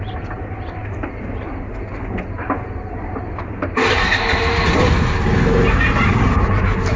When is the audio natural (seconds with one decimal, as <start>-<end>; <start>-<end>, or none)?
0.0-7.0